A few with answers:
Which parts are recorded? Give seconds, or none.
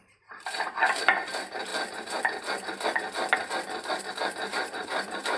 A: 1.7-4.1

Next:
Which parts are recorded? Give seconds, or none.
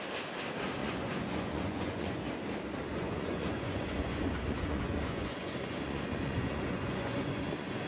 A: 0.0-0.8; 2.2-2.9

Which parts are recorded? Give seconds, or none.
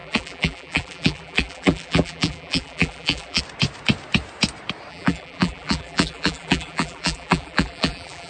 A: 3.4-4.9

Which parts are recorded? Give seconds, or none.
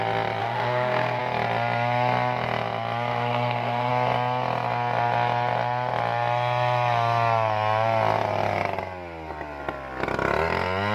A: 0.0-0.4; 1.2-3.1; 3.9-10.9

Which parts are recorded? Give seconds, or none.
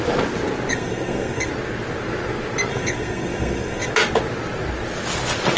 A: 0.0-0.7; 1.5-2.7; 3.9-5.6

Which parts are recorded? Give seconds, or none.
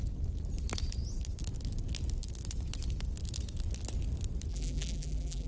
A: 0.0-4.5